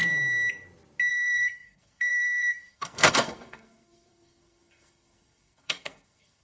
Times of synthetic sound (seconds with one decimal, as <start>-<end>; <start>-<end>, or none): 1.1-6.4